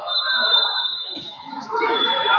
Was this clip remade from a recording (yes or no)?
yes